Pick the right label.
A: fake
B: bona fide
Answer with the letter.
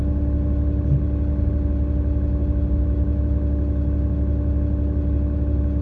B